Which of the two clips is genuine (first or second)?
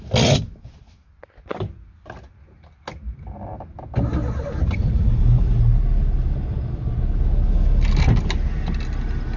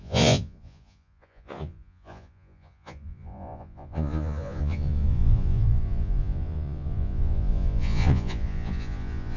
first